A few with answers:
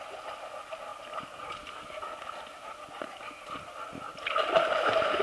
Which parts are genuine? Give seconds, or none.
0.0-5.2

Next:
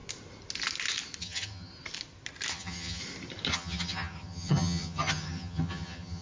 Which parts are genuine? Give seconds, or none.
0.0-1.2; 1.7-2.5; 3.0-3.5

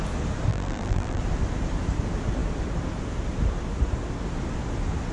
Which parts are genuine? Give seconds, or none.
0.0-0.5; 1.2-5.1

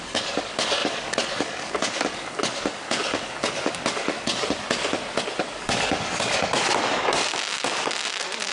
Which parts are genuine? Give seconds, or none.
4.3-5.4

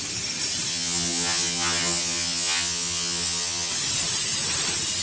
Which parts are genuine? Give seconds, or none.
0.0-0.7; 3.7-5.0

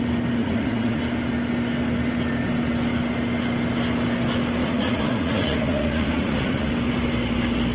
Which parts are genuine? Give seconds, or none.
0.0-0.4; 1.0-4.6; 6.7-7.7

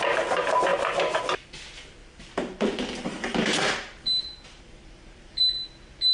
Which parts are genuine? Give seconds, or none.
0.0-2.0; 5.4-6.1